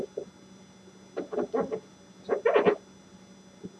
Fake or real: real